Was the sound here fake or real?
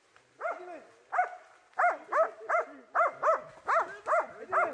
real